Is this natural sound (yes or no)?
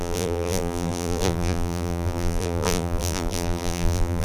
no